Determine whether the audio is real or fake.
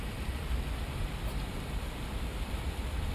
real